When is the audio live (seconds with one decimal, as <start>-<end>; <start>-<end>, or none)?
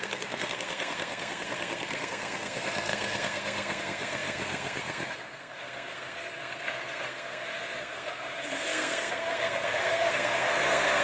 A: none